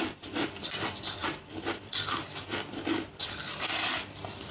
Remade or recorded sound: recorded